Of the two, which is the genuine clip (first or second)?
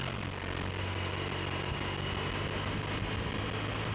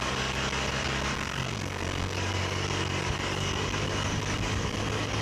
first